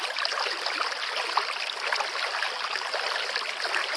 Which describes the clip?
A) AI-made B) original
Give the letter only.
B